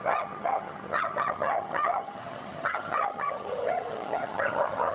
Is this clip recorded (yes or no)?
no